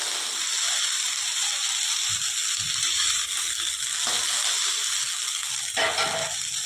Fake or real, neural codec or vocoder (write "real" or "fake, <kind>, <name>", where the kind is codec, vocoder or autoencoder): real